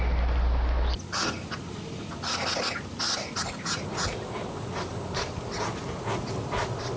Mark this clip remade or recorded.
recorded